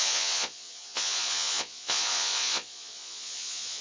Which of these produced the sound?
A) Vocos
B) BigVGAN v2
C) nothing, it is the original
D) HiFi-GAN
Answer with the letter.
A